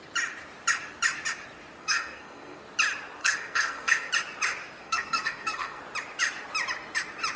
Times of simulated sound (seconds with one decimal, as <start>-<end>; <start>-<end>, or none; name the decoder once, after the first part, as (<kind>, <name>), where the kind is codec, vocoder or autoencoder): 1.8-2.6 (codec, SNAC); 3.2-4.1; 4.8-5.8

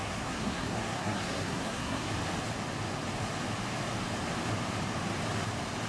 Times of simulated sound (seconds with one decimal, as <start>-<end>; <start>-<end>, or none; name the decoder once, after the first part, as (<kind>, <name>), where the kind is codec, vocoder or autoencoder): 0.0-2.1 (codec, SNAC)